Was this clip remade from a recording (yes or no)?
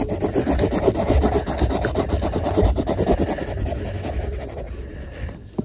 no